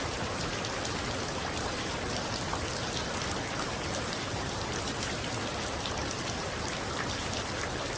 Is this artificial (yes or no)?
no